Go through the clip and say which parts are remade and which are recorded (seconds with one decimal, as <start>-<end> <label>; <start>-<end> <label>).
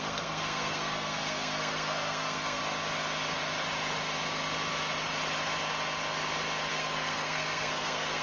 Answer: 0.0-2.6 remade; 2.6-6.7 recorded; 6.7-8.2 remade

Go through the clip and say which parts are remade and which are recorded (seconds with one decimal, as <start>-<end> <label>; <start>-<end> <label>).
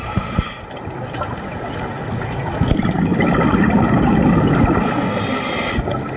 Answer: 0.0-6.2 recorded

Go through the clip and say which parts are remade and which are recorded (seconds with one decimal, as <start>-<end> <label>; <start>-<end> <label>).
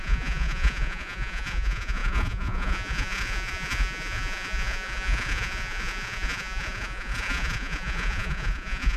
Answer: 0.0-9.0 remade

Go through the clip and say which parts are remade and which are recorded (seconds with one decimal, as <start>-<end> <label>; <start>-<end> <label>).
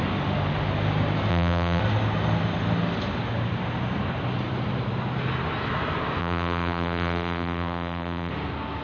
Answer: 0.0-1.3 recorded; 1.3-1.8 remade; 1.8-6.2 recorded; 6.2-8.3 remade; 8.3-8.8 recorded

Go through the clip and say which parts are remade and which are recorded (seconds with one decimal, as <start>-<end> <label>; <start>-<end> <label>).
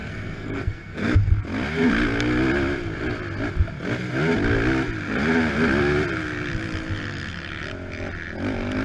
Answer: 0.0-1.3 remade; 1.3-8.8 recorded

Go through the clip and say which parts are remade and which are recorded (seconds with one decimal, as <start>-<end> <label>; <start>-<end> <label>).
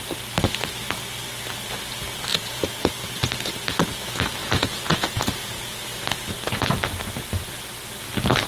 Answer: 0.0-2.3 recorded; 2.3-2.9 remade; 2.9-4.4 recorded; 4.4-5.9 remade; 5.9-8.5 recorded